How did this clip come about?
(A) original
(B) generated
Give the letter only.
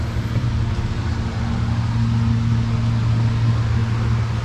A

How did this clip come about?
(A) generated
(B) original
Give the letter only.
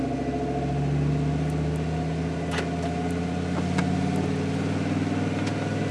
B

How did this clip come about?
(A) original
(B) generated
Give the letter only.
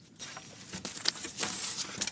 A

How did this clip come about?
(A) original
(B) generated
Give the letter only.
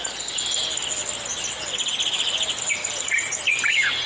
A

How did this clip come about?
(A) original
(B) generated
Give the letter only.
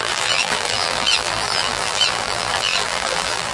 B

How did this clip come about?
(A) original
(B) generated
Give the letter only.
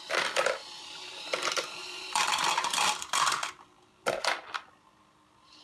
B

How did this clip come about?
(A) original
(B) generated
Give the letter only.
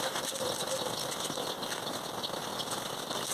A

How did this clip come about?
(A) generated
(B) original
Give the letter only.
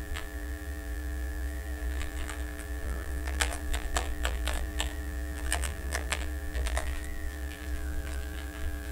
A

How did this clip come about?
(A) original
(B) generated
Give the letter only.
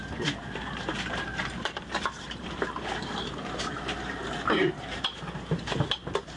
B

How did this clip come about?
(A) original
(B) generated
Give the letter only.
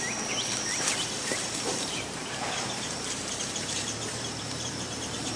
B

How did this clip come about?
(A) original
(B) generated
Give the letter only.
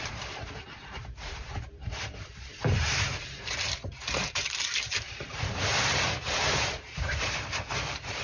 B